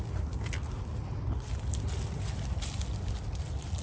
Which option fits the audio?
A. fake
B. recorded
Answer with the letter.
B